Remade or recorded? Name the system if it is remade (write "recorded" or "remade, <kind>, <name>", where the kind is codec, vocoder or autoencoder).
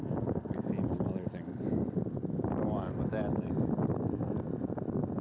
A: recorded